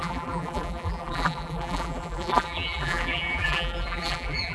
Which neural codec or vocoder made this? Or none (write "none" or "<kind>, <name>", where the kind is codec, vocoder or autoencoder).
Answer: vocoder, BigVGAN v2